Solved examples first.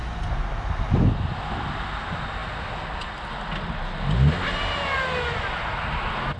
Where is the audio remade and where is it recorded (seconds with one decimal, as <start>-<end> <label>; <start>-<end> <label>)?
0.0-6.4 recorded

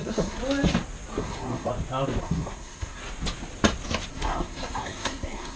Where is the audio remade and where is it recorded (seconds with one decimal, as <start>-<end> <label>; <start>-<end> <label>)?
0.0-0.4 remade; 0.4-1.2 recorded; 1.2-1.7 remade; 1.7-2.2 recorded; 2.2-3.0 remade; 3.0-4.1 recorded; 4.1-5.6 remade

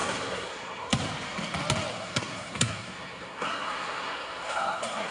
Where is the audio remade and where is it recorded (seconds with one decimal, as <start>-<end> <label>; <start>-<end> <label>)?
0.0-0.9 remade; 0.9-1.9 recorded; 1.9-5.1 remade

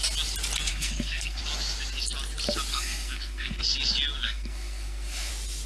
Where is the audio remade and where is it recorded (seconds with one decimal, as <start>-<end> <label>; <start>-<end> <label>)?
0.0-0.7 recorded; 0.7-1.4 remade; 1.4-2.7 recorded; 2.7-3.6 remade; 3.6-4.2 recorded; 4.2-5.3 remade; 5.3-5.7 recorded